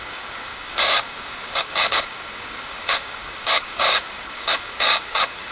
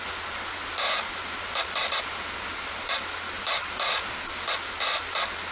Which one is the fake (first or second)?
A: first